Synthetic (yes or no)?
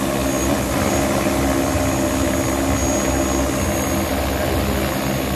no